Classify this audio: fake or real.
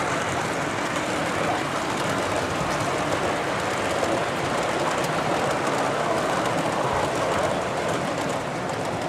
real